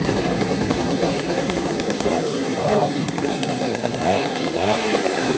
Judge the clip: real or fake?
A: fake